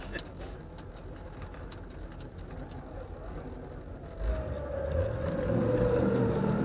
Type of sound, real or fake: real